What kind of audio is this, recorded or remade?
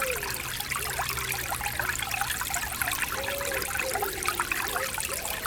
recorded